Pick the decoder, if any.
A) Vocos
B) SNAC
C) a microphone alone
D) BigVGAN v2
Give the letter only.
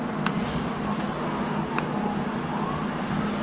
C